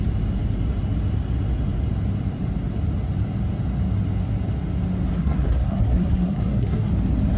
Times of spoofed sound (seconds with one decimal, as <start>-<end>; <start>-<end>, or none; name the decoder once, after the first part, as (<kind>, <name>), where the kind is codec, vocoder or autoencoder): 5.2-6.9 (codec, SNAC)

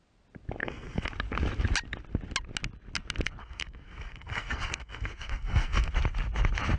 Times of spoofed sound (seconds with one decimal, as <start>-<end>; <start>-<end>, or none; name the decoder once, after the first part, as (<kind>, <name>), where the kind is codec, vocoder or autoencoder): 0.6-1.1 (codec, SNAC); 3.4-5.9

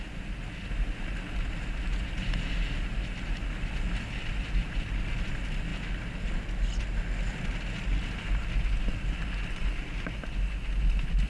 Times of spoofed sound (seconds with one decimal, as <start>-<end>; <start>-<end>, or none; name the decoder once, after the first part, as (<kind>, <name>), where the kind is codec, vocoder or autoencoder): none

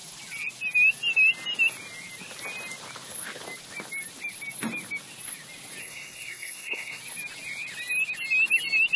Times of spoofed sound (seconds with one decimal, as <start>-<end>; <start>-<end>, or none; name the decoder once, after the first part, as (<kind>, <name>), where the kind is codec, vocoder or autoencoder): 5.8-7.0 (codec, SNAC)

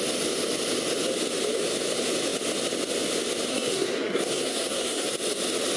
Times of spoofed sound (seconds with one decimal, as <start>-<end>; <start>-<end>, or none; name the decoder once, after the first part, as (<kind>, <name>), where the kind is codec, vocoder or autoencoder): 3.5-5.1 (codec, SNAC)